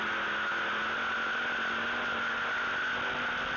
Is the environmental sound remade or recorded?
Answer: recorded